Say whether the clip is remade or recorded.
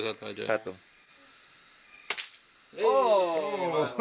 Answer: recorded